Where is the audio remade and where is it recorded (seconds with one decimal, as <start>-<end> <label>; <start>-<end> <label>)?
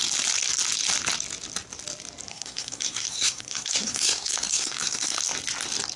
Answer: 0.0-2.3 recorded; 2.3-5.2 remade; 5.2-6.0 recorded